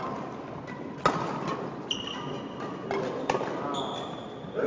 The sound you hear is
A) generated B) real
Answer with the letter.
B